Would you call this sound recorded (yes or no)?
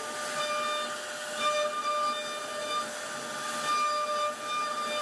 yes